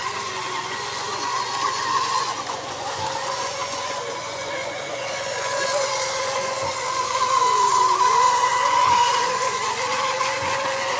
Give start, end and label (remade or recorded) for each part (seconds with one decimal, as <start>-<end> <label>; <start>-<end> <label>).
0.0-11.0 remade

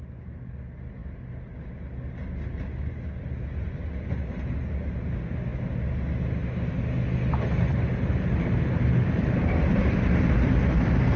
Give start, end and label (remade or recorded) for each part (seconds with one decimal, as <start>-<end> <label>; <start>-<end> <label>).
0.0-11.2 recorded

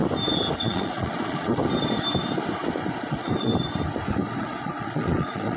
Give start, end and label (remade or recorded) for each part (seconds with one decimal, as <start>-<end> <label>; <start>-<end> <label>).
0.0-0.6 recorded; 0.6-1.6 remade; 1.6-3.0 recorded; 3.0-3.5 remade; 3.5-4.4 recorded; 4.4-5.6 remade

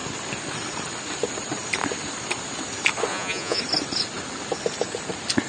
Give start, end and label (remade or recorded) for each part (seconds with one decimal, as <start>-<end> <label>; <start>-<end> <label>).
0.0-3.1 recorded; 3.1-3.6 remade; 3.6-5.5 recorded

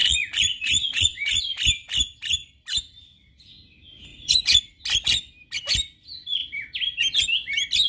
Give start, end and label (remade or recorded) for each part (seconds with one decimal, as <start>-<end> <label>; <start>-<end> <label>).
0.0-1.4 remade; 1.4-4.1 recorded; 4.1-4.8 remade; 4.8-7.9 recorded

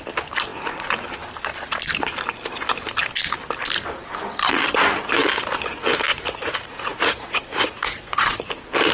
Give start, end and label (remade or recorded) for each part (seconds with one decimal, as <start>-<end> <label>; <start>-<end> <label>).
0.0-6.1 recorded; 6.1-8.5 remade; 8.5-8.9 recorded